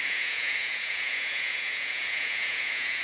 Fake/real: fake